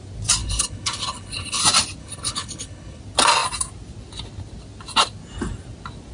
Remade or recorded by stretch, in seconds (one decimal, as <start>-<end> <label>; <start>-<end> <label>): 0.0-0.4 recorded; 0.4-1.6 remade; 1.6-2.0 recorded; 2.0-3.0 remade; 3.0-6.1 recorded